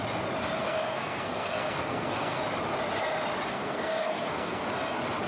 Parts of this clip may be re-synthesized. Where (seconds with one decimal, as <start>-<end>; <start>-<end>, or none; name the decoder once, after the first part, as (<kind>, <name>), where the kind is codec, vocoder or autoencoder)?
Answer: 0.6-2.4 (codec, SNAC); 3.5-4.6

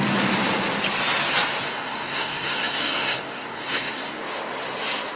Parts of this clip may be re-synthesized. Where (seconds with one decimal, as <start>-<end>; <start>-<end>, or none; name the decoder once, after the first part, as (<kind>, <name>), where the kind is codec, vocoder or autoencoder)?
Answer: 1.6-4.2 (codec, SNAC)

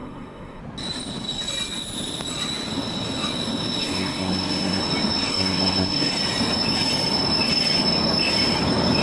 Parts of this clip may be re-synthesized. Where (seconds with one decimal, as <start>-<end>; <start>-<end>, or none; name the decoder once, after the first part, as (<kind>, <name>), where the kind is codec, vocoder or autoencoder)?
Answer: 0.0-0.6 (codec, SNAC); 3.8-4.8; 5.3-6.1